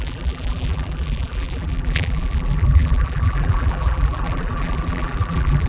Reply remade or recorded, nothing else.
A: remade